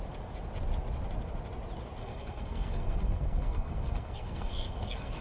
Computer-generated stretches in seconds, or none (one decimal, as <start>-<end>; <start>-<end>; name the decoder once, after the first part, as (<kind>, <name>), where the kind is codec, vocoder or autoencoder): 2.0-5.2 (codec, SNAC)